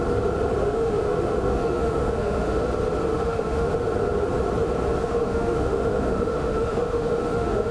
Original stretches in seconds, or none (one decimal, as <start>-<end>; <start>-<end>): 0.0-0.6; 2.6-3.1; 3.7-5.0